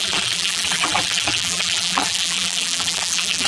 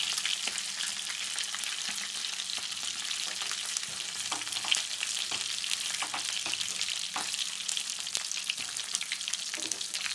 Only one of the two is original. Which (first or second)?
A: second